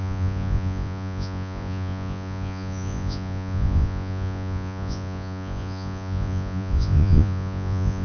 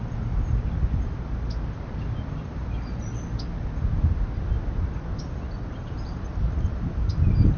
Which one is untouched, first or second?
second